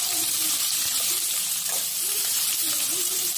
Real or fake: fake